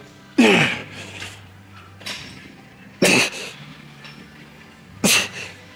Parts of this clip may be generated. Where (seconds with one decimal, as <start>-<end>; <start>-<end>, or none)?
0.8-4.2